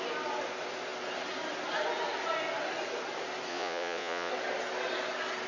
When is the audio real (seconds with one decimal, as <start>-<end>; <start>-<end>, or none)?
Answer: 0.0-3.5; 4.3-5.5